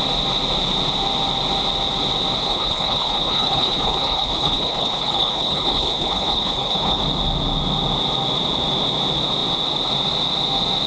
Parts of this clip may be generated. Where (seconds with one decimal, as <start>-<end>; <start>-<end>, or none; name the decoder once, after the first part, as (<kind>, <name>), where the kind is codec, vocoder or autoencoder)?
2.4-7.0 (codec, HILCodec)